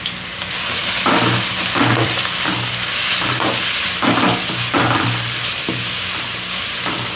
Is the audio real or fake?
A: fake